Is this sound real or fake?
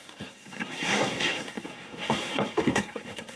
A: fake